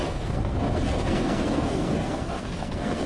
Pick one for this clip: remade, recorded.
remade